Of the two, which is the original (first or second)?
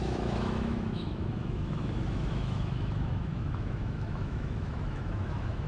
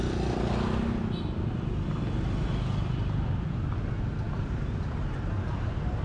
second